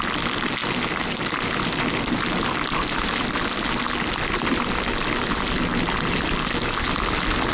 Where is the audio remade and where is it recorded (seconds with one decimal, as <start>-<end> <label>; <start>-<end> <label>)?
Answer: 0.0-7.5 recorded